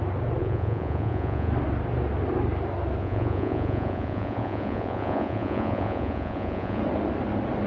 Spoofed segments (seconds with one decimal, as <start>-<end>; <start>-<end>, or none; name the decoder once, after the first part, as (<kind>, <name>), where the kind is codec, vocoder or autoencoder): 0.4-1.5 (vocoder, Vocos); 3.0-6.8